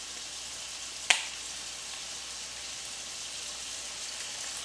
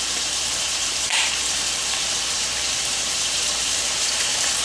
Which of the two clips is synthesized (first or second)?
second